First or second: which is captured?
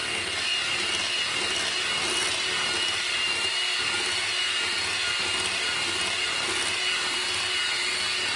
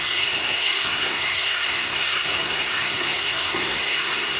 first